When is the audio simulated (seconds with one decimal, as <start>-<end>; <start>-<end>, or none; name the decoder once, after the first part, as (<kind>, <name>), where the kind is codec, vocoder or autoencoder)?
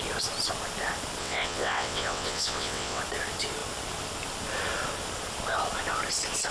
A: 1.2-3.0 (vocoder, WaveNeXt)